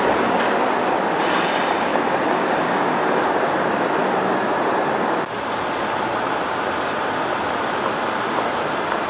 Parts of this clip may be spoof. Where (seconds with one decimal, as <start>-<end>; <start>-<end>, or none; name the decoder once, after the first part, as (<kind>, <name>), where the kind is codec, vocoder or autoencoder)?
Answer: 1.9-3.4 (codec, DAC)